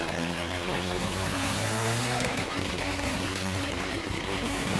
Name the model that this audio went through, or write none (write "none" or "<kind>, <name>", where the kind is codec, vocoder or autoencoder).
codec, SNAC